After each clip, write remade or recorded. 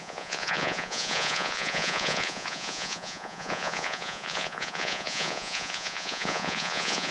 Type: remade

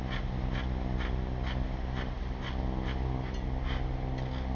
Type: recorded